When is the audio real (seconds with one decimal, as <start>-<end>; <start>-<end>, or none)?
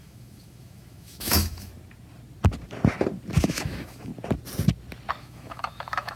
1.7-3.4; 4.1-5.2